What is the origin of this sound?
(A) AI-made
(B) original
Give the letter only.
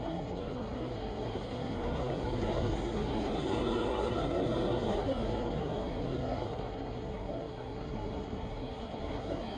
A